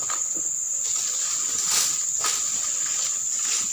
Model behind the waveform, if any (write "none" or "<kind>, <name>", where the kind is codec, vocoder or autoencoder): none